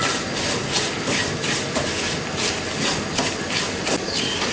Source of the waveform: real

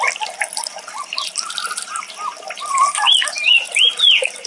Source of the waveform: real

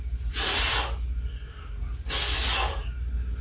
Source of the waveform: real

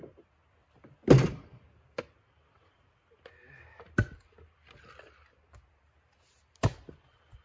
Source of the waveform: real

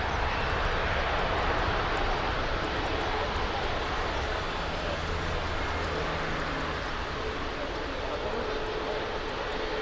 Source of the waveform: real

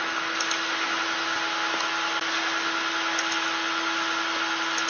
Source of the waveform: real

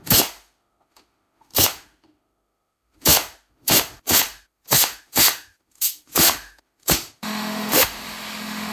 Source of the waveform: fake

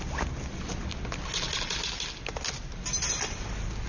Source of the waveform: real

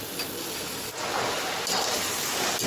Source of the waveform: real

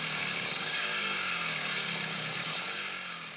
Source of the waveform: fake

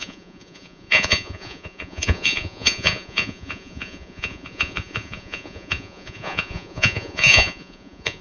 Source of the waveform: fake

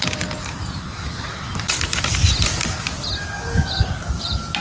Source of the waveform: real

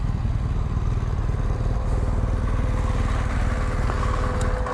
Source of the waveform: real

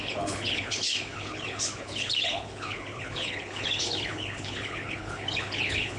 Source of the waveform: fake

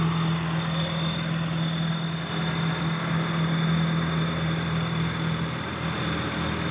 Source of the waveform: real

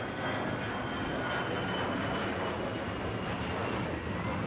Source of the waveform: real